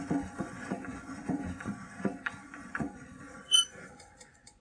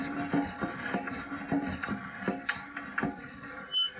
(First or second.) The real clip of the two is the second